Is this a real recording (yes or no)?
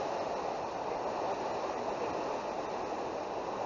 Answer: yes